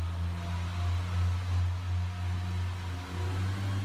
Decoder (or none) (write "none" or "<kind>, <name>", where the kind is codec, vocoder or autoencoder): none